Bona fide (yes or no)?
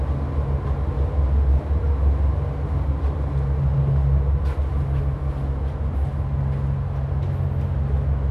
yes